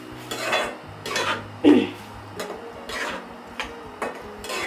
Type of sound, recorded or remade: recorded